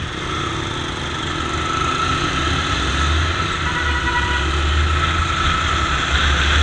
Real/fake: real